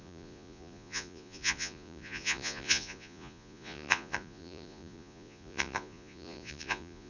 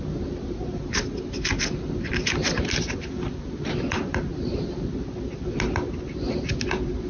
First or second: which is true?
second